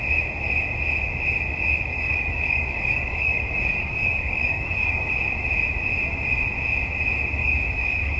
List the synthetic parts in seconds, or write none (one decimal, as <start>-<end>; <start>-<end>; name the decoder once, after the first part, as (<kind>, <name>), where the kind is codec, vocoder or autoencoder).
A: 1.9-5.1 (codec, DAC); 7.4-8.2